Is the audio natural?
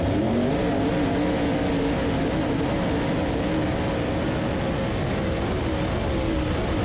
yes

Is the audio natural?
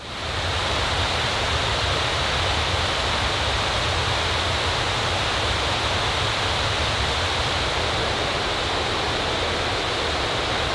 yes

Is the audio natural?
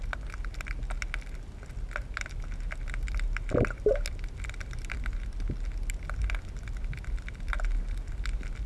yes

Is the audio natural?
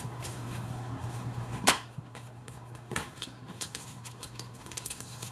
no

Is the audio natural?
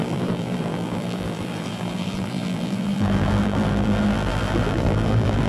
no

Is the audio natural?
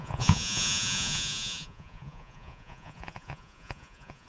no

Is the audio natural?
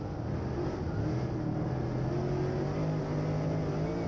yes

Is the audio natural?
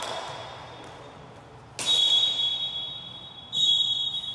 yes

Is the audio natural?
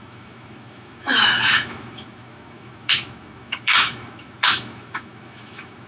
no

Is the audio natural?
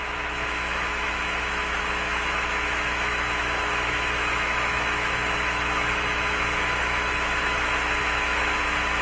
no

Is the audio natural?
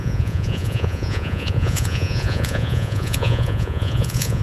no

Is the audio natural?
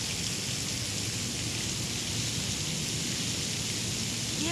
yes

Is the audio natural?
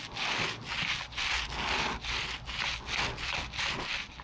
yes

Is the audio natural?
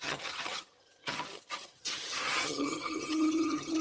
no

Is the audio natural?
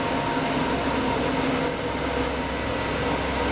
yes